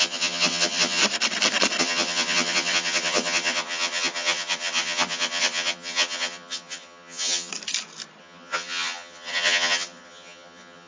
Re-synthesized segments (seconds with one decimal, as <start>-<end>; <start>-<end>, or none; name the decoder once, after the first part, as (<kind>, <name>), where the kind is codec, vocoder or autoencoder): 0.0-1.0 (vocoder, HiFi-GAN); 1.8-7.5; 8.2-10.9

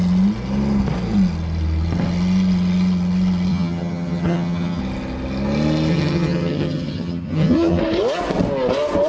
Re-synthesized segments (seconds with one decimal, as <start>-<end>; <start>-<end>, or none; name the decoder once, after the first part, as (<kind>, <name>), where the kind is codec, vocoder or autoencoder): 3.5-4.8 (vocoder, HiFi-GAN); 5.9-7.8

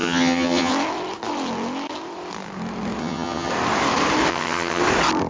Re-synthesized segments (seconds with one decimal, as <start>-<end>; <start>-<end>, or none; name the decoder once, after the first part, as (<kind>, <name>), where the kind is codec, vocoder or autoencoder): 0.0-0.7 (vocoder, HiFi-GAN); 3.0-3.5; 4.3-4.8

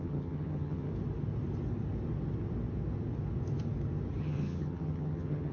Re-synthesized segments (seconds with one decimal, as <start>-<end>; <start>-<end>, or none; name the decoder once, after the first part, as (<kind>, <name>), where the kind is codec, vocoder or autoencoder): 0.0-0.9 (vocoder, HiFi-GAN); 4.2-5.5

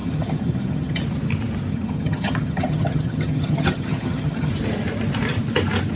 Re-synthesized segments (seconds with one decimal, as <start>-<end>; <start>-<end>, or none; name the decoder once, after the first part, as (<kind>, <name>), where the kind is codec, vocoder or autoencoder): 0.0-1.0 (vocoder, HiFi-GAN); 1.7-4.5

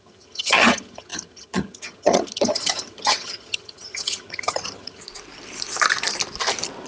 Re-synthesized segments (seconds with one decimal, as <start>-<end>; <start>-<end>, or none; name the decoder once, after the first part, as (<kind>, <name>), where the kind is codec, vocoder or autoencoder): 0.0-5.0 (vocoder, HiFi-GAN)

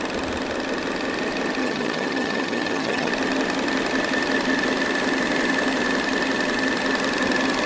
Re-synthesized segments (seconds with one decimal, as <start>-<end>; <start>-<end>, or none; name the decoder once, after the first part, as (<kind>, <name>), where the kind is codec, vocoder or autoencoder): 1.6-3.1 (vocoder, HiFi-GAN)

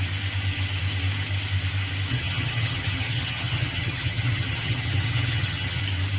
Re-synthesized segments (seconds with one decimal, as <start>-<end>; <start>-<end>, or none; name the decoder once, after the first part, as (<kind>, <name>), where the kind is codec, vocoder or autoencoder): 2.1-5.8 (vocoder, HiFi-GAN)